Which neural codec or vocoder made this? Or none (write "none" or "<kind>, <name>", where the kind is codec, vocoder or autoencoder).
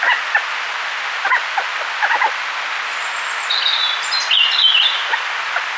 none